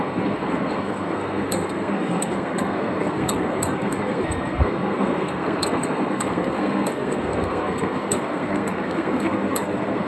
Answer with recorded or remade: remade